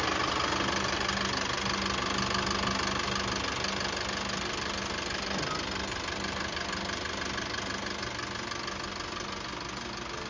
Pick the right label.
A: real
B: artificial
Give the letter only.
A